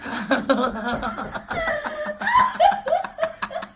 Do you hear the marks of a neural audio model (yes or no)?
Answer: no